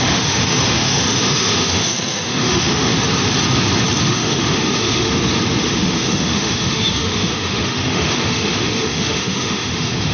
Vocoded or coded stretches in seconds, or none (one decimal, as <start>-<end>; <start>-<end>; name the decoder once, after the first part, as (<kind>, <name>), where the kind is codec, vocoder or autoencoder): 0.0-2.9 (autoencoder, DAC-VAE); 4.0-5.1; 5.6-10.1